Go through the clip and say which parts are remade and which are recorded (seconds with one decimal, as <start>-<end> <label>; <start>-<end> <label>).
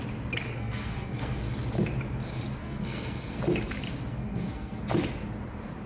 0.0-0.5 recorded; 0.5-1.4 remade; 1.4-2.6 recorded; 2.6-3.4 remade; 3.4-4.1 recorded; 4.1-4.8 remade; 4.8-5.9 recorded